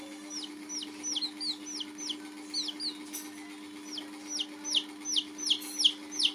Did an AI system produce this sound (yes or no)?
no